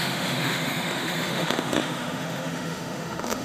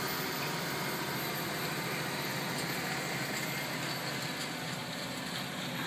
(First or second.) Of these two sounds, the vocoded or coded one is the first